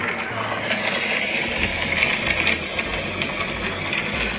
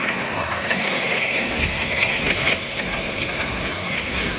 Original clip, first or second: first